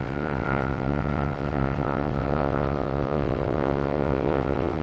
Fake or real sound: fake